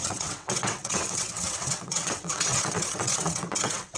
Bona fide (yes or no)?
no